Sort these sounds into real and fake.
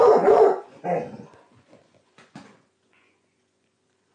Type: fake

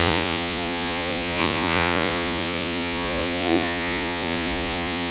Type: fake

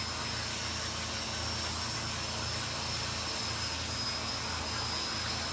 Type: real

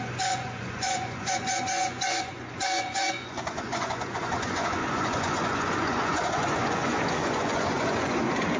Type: fake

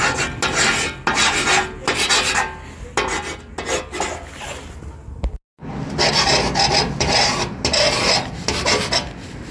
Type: real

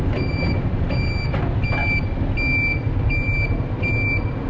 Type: real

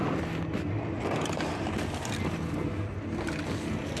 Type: real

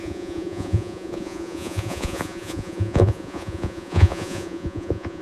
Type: fake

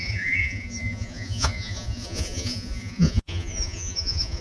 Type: fake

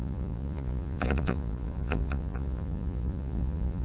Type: fake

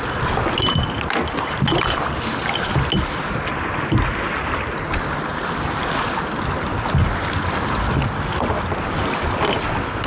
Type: real